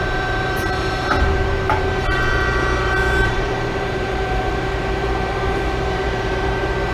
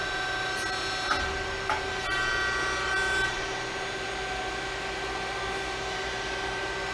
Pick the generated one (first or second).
first